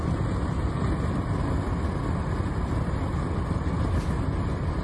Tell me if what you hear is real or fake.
real